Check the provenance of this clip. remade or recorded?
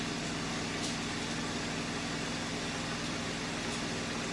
recorded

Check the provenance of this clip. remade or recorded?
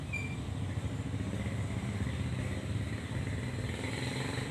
recorded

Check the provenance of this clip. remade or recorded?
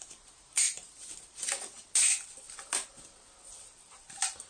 recorded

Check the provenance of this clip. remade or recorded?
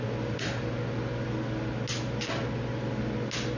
recorded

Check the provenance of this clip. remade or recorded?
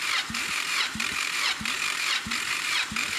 remade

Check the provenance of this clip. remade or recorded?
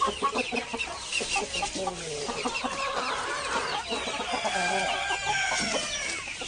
recorded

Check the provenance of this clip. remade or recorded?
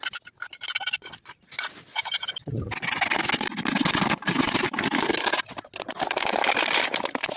recorded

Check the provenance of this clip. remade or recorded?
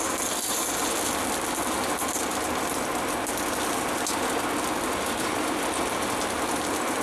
recorded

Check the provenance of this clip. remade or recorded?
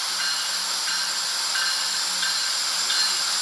remade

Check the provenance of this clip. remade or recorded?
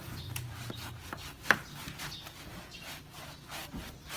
recorded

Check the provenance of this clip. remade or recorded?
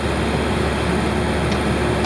recorded